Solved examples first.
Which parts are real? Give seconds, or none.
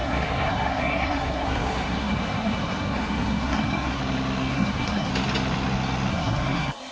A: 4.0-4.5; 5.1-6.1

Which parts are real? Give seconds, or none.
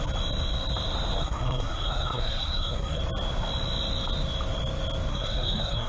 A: 0.0-1.2; 3.0-5.1